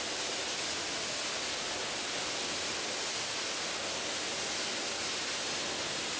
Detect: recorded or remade recorded